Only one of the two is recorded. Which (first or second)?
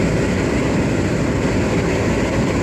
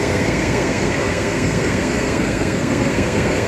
first